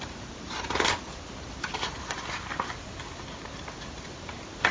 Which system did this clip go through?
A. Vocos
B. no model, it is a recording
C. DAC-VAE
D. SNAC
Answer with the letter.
B